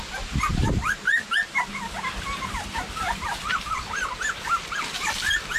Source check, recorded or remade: recorded